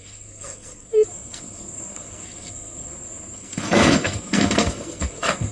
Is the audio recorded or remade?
remade